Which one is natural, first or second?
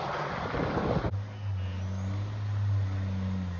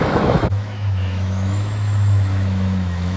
first